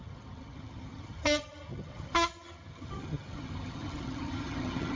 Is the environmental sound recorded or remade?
remade